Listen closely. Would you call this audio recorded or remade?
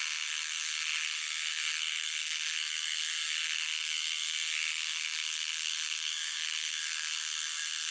remade